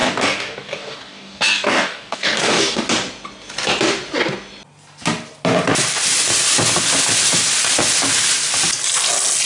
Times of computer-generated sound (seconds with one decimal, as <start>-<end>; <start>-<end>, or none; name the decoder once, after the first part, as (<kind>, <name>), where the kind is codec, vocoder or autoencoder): 0.0-2.8 (codec, DAC)